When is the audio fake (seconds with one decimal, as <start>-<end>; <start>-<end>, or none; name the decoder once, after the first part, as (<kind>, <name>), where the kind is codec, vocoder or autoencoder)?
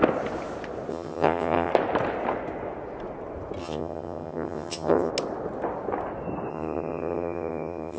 0.9-1.7 (vocoder, HiFi-GAN); 3.6-5.1; 6.5-8.0